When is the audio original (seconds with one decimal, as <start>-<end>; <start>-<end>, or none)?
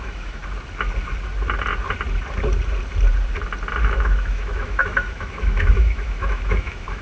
0.4-3.8